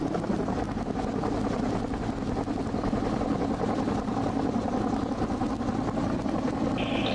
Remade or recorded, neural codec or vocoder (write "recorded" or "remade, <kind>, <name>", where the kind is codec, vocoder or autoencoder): recorded